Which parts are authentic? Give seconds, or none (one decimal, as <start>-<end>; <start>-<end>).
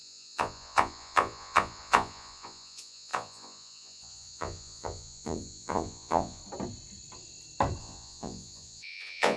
6.4-7.8